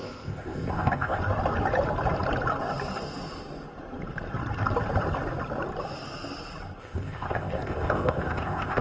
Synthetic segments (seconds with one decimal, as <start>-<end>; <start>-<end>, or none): 0.0-1.2; 6.8-8.8